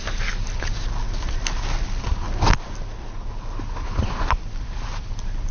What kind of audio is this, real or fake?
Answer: real